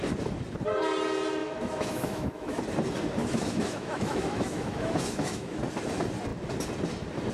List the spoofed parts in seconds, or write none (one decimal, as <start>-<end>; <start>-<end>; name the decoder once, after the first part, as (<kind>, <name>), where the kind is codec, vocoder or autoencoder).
1.4-2.6 (autoencoder, DAC-VAE); 3.2-5.6